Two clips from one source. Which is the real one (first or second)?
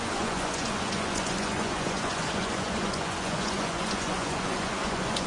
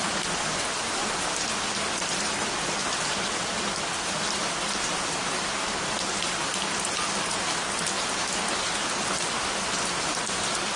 second